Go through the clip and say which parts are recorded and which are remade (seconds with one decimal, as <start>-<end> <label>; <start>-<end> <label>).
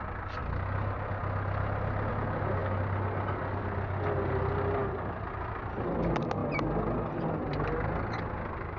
0.0-8.8 recorded